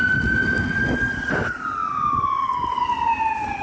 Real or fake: real